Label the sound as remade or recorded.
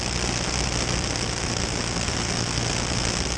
recorded